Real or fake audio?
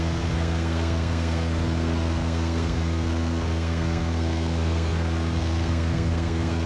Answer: fake